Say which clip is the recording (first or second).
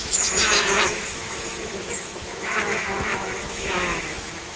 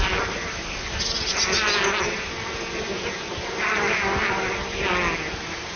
second